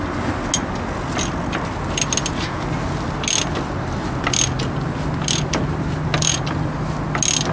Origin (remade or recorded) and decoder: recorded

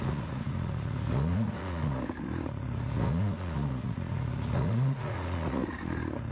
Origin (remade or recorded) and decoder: remade, vocoder, Vocos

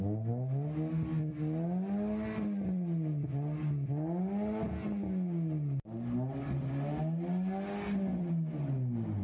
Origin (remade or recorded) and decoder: recorded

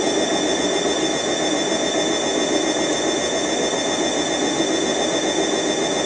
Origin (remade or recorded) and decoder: recorded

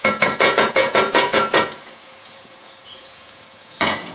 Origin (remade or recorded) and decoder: remade, vocoder, Vocos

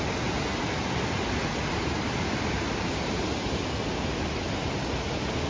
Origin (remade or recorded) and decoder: recorded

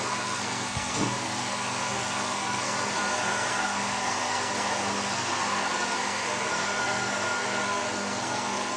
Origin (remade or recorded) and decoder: remade, codec, SNAC